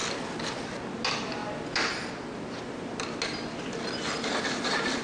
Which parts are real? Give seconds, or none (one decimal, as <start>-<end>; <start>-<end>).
0.0-5.0